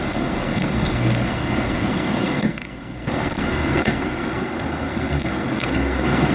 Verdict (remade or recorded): remade